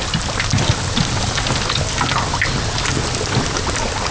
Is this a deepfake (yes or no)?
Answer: no